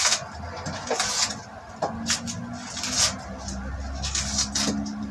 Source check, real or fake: real